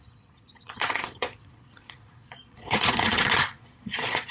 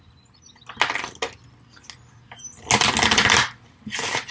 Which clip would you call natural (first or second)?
second